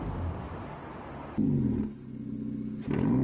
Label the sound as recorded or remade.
recorded